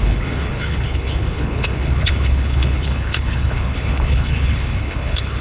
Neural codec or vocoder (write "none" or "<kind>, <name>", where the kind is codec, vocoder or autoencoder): codec, HILCodec